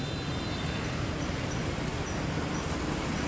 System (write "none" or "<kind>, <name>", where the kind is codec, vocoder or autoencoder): none